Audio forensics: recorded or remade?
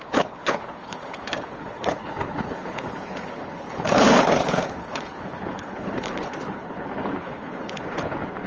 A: remade